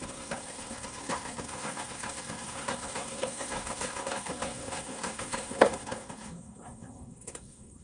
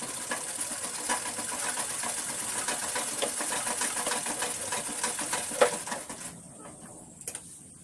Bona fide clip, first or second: second